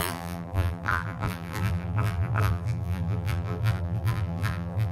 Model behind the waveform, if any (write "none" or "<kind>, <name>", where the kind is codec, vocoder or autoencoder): vocoder, BigVGAN v2